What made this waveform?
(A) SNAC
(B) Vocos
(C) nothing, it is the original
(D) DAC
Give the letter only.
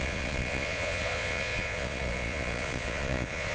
B